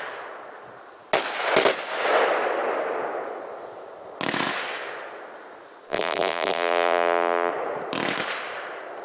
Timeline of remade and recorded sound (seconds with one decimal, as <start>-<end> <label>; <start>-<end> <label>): 0.0-5.9 recorded; 5.9-7.5 remade; 7.5-9.0 recorded